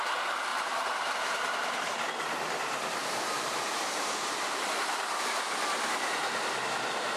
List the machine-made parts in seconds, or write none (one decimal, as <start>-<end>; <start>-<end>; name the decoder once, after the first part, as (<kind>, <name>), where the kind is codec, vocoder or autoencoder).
0.5-1.9 (vocoder, BigVGAN v2); 3.0-4.7